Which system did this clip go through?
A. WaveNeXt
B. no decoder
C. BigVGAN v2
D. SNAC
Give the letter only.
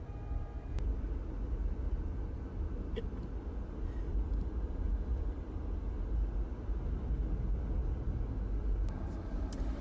B